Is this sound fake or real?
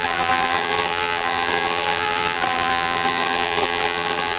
fake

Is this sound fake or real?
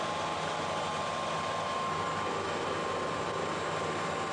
real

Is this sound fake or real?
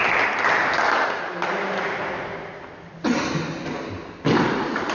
real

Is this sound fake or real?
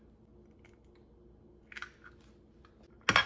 real